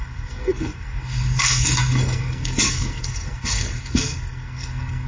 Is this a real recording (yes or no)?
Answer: no